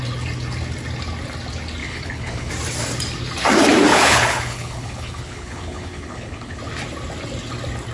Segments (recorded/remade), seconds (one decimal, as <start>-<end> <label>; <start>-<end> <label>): 0.0-1.8 recorded; 1.8-2.5 remade; 2.5-3.9 recorded; 3.9-6.6 remade; 6.6-7.9 recorded